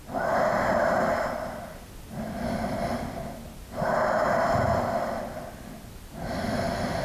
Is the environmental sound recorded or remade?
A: recorded